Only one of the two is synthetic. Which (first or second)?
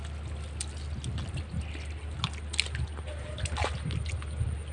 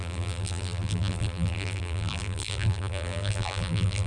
second